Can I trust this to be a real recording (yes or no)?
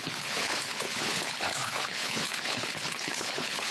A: no